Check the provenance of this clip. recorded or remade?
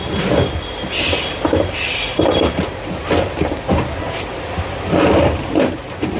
recorded